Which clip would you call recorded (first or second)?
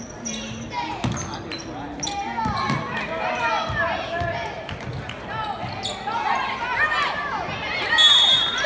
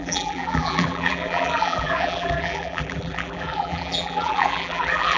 first